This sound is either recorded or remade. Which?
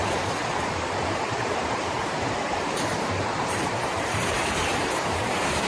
remade